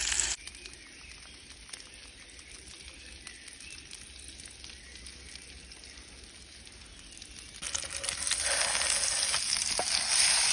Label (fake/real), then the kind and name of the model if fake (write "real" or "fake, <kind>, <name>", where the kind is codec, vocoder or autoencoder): real